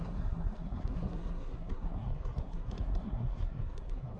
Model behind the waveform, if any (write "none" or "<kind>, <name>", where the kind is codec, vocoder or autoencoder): codec, SNAC